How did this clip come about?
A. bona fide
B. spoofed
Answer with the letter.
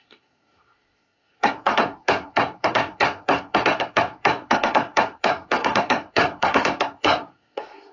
B